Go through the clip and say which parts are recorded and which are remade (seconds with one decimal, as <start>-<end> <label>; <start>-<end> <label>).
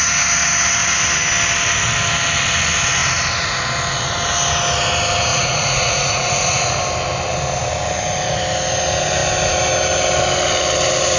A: 0.0-5.3 recorded; 5.3-6.8 remade; 6.8-11.2 recorded